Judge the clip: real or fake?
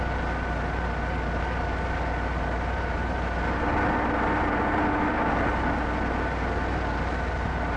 real